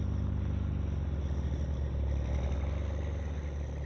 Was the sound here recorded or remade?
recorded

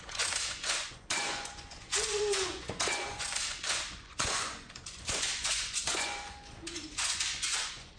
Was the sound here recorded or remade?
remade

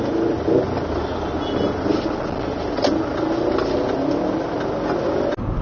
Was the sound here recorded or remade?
recorded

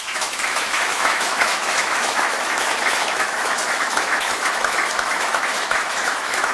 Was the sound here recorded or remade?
remade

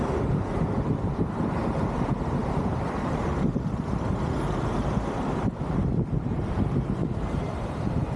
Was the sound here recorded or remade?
remade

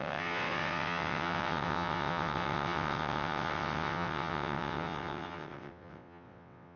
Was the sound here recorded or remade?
remade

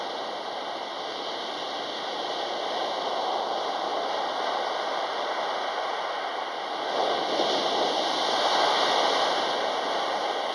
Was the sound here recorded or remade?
recorded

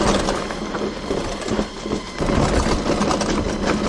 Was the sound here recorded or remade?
recorded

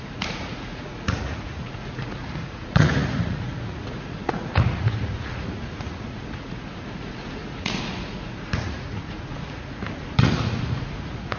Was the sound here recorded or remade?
remade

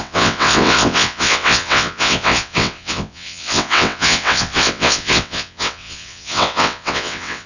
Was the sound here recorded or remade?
remade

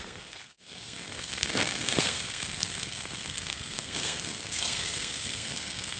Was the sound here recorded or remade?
remade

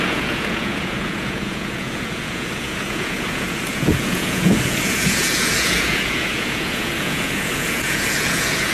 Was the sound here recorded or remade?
remade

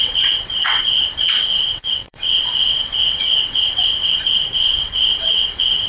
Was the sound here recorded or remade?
remade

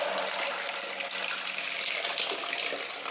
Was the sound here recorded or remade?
recorded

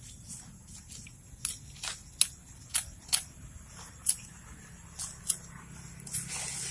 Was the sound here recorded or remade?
recorded